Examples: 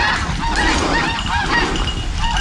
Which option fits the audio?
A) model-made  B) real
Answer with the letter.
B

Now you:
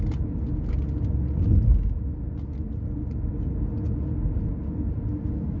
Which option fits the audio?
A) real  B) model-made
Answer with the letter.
A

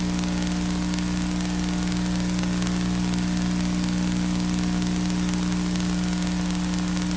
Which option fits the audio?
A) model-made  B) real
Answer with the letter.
B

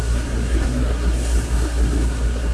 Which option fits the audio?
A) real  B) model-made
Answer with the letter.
B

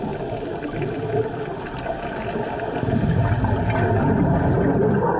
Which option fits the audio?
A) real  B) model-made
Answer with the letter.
A